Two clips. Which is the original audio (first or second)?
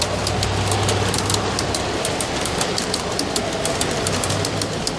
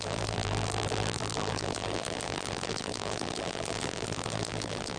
first